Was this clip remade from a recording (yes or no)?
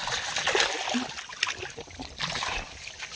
no